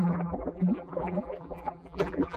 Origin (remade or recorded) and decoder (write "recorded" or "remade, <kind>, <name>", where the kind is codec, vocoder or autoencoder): remade, vocoder, BigVGAN v2